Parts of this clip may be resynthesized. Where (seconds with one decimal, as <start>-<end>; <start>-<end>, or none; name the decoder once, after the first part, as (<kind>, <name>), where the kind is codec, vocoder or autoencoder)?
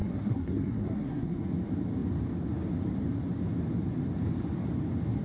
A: 0.0-1.4 (codec, SNAC)